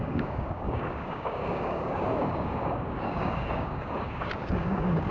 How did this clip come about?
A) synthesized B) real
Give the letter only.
A